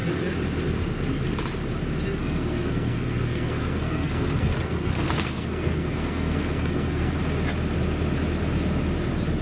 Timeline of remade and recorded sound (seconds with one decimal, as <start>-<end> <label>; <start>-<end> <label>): 0.0-2.2 recorded; 2.2-7.2 remade; 7.2-9.4 recorded